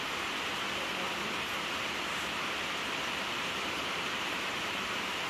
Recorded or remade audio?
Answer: recorded